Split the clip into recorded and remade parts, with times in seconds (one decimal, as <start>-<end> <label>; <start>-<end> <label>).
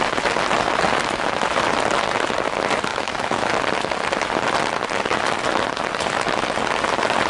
0.0-2.9 recorded; 2.9-3.5 remade; 3.5-7.3 recorded